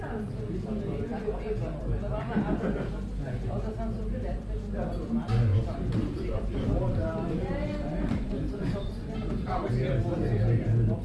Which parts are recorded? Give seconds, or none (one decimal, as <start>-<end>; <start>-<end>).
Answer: 0.0-5.5; 9.7-11.0